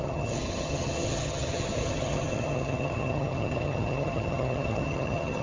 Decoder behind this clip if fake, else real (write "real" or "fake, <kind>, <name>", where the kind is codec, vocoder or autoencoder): fake, vocoder, HiFi-GAN